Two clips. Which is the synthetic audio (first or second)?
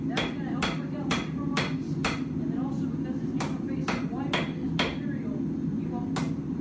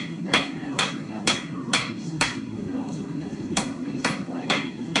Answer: second